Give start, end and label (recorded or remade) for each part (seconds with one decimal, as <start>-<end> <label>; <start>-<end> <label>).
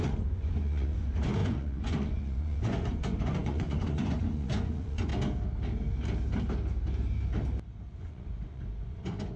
0.0-5.1 remade; 5.1-7.9 recorded; 7.9-9.4 remade